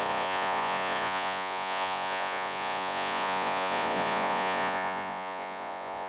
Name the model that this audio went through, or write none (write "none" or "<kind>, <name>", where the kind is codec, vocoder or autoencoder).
vocoder, Vocos